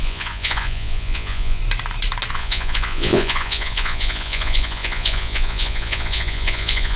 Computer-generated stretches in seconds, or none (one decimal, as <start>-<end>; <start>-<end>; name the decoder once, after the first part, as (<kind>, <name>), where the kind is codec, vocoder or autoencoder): 0.0-1.6 (vocoder, Vocos); 2.3-7.0